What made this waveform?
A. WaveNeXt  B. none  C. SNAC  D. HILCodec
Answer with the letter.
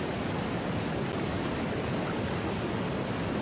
B